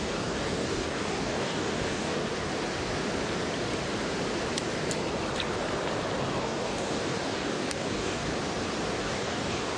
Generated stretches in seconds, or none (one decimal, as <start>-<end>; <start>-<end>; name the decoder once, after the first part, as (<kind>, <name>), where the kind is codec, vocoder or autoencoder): 0.0-2.5 (codec, DAC); 6.4-8.3; 9.0-9.8